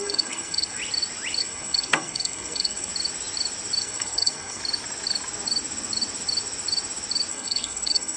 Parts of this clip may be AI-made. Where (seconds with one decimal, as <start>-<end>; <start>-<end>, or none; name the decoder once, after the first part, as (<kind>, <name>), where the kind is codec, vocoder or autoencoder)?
0.0-0.8 (codec, SNAC); 1.4-2.9; 3.8-4.6; 7.3-8.2